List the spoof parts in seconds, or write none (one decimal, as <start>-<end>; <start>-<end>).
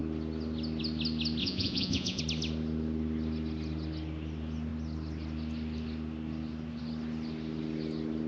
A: 1.4-2.2